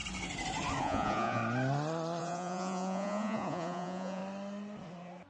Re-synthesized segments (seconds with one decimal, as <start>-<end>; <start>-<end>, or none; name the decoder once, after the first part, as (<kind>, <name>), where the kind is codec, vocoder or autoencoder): 0.8-1.4 (vocoder, Vocos); 2.2-4.2